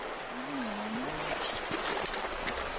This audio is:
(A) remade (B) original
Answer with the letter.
A